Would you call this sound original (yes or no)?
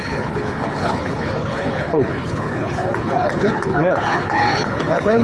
no